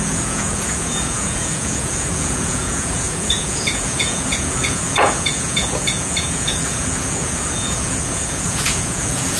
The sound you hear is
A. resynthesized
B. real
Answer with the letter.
A